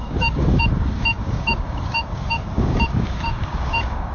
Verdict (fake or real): fake